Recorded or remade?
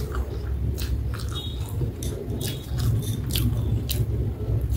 recorded